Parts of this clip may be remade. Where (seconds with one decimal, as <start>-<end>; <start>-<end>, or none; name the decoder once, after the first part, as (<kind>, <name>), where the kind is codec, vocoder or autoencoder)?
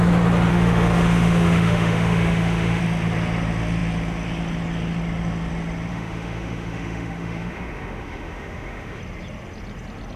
0.5-2.8 (autoencoder, DAC-VAE); 5.9-9.0